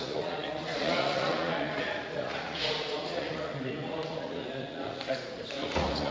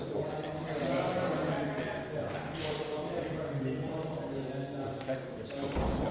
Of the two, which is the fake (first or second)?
first